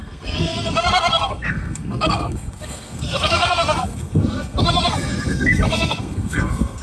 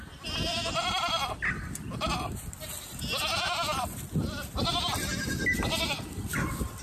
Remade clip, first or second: first